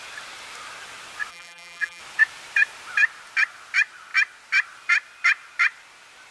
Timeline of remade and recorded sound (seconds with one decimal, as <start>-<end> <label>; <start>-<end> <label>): 0.0-1.3 recorded; 1.3-2.0 remade; 2.0-6.3 recorded